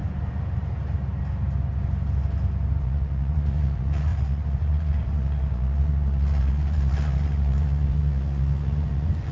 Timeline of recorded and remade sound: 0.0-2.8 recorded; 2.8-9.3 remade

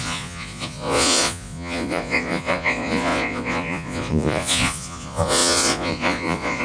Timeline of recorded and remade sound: 0.0-6.6 remade

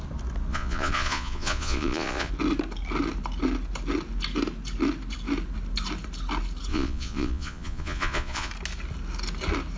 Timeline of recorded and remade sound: 0.0-0.5 recorded; 0.5-2.3 remade; 2.3-6.7 recorded; 6.7-8.5 remade; 8.5-9.8 recorded

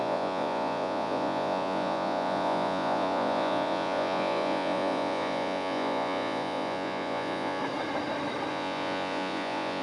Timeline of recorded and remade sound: 0.0-7.6 remade; 7.6-8.5 recorded; 8.5-9.8 remade